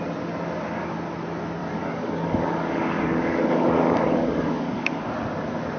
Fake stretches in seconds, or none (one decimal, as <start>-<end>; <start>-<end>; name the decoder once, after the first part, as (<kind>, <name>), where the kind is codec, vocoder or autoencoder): 1.6-5.1 (codec, DAC)